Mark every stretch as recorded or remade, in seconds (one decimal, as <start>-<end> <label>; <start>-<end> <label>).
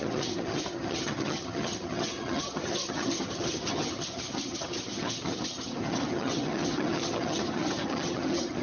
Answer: 0.0-8.6 remade